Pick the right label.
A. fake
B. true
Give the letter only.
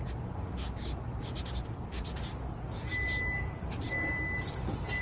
B